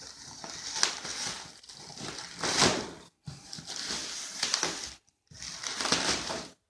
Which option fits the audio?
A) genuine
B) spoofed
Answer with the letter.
A